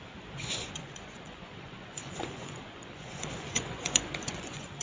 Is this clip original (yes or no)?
no